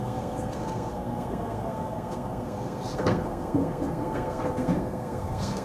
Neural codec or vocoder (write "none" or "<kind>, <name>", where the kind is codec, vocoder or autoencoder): codec, SNAC